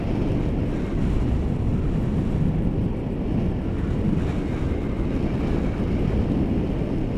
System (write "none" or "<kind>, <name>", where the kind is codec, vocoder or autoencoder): none